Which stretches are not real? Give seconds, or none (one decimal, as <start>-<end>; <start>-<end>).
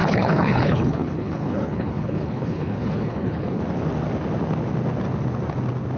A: 0.0-3.6